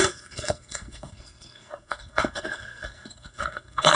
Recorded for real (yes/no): no